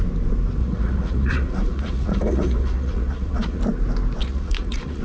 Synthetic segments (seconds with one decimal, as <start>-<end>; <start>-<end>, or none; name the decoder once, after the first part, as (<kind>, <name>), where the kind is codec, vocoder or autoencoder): 0.6-3.6 (vocoder, Vocos); 4.2-5.0